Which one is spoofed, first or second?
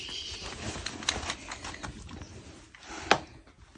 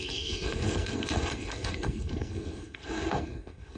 second